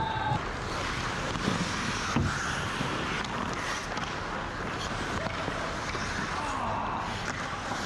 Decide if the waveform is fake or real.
real